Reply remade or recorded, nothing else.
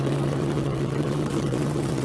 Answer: remade